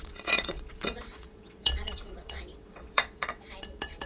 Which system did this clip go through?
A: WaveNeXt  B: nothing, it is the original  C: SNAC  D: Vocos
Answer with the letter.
A